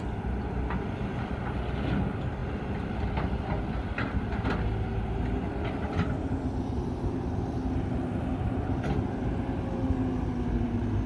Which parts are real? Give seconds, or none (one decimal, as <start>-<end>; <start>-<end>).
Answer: 0.0-2.4; 3.2-11.1